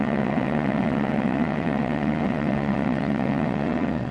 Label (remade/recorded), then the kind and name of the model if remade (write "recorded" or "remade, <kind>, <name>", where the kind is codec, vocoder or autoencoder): remade, vocoder, WaveNeXt